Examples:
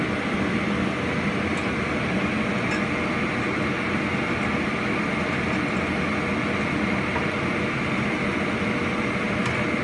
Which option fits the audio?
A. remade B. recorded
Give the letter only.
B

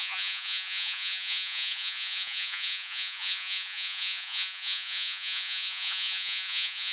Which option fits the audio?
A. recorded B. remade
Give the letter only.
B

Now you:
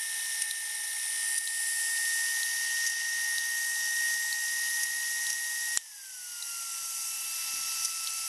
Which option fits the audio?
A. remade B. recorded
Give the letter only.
B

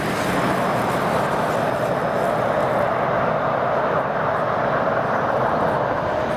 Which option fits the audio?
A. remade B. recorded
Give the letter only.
B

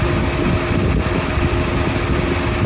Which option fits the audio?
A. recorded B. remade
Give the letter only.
A